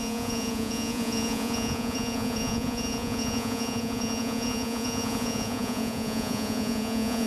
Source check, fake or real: fake